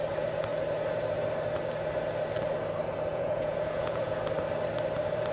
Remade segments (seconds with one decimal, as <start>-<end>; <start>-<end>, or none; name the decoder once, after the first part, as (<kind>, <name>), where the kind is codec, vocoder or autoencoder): 3.1-4.2 (vocoder, Vocos)

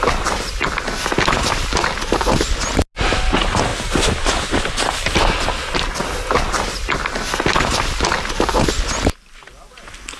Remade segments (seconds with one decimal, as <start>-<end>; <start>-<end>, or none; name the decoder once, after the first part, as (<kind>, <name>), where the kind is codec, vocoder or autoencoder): none

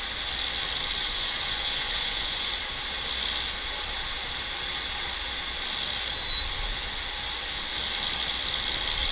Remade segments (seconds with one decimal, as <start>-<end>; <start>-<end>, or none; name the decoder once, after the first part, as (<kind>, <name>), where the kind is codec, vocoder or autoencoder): 1.0-2.5 (vocoder, Vocos)